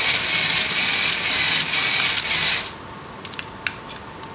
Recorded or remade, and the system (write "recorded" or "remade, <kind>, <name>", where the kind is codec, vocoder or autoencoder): recorded